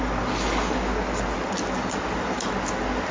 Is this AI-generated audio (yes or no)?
no